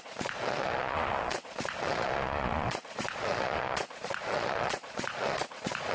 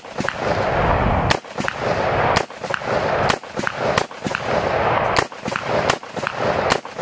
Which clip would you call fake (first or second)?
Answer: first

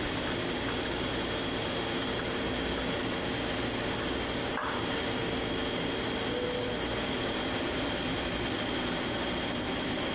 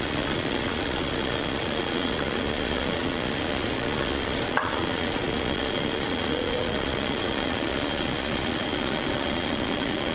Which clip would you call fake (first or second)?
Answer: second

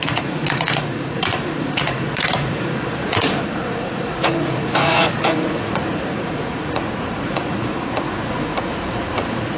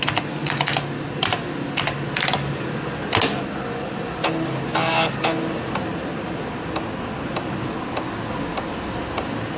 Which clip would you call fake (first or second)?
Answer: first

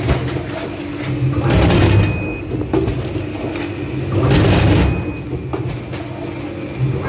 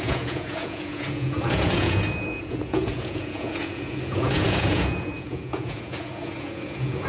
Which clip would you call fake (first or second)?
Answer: second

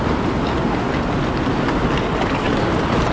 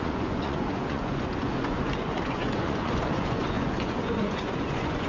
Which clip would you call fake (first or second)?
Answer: second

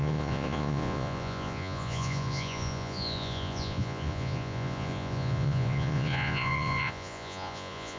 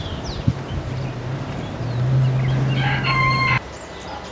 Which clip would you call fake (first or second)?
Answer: first